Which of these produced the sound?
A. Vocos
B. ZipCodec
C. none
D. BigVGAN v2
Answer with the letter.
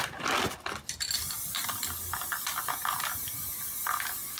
C